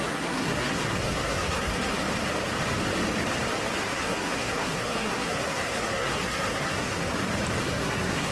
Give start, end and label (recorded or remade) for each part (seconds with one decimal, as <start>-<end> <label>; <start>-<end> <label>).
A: 0.0-2.0 remade; 2.0-3.8 recorded; 3.8-7.1 remade; 7.1-7.6 recorded; 7.6-8.3 remade